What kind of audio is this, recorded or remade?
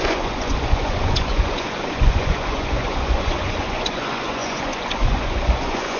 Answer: remade